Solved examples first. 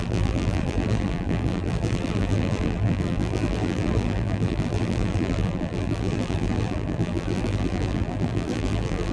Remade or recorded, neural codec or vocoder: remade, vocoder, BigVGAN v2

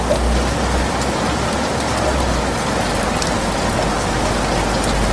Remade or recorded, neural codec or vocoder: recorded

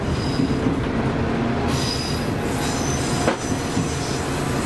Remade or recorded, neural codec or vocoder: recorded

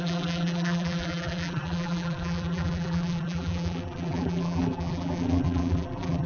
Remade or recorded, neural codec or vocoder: remade, vocoder, BigVGAN v2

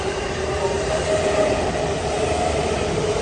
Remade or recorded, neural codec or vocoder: remade, vocoder, BigVGAN v2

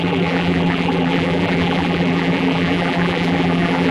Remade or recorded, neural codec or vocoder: remade, vocoder, BigVGAN v2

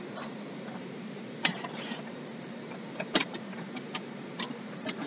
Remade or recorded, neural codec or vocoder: remade, vocoder, BigVGAN v2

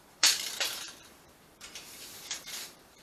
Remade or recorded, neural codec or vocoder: remade, vocoder, BigVGAN v2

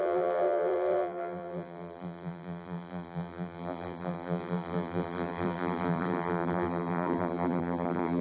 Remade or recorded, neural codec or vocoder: remade, vocoder, BigVGAN v2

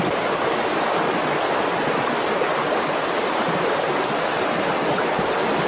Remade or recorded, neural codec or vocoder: recorded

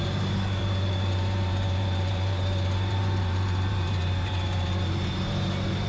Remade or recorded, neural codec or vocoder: remade, vocoder, BigVGAN v2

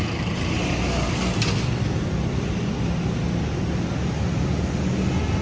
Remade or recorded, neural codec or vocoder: recorded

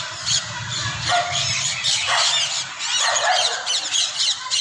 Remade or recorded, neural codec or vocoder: remade, vocoder, BigVGAN v2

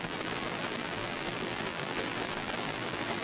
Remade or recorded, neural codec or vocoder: remade, vocoder, BigVGAN v2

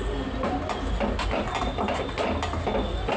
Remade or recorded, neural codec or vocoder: recorded